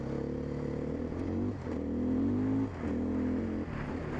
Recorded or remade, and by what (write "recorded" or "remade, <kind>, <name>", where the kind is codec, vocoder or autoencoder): recorded